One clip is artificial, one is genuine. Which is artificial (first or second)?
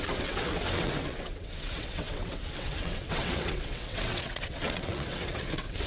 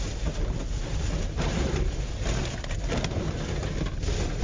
first